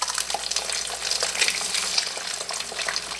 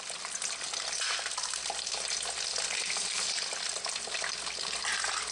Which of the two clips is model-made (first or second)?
second